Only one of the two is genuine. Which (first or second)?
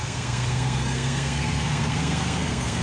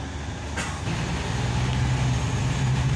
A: second